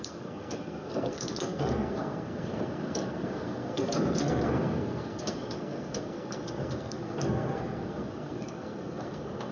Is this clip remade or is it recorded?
remade